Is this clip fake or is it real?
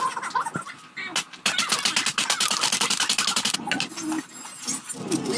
real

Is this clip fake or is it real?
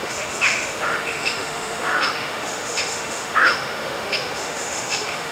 fake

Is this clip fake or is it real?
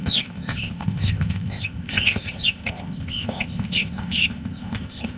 fake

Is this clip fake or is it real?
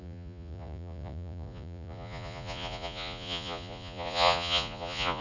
fake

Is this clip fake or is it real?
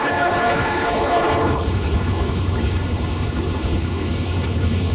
fake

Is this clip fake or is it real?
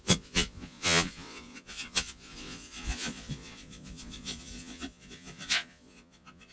fake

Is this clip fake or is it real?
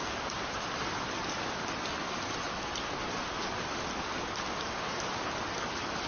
real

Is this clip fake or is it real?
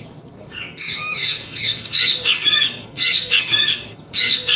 fake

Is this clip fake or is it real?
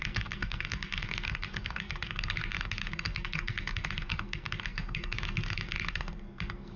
fake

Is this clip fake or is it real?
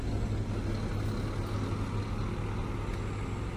real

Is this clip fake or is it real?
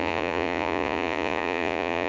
fake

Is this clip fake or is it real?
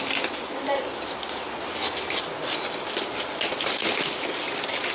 real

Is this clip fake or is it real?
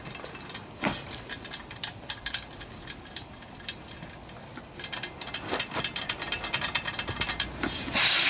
real